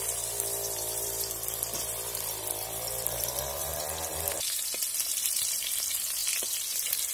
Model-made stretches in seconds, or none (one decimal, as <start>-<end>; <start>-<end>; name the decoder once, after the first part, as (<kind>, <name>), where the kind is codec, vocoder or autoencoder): 0.0-3.7 (vocoder, BigVGAN v2); 4.5-6.2